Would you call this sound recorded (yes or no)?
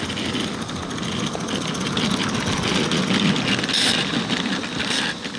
yes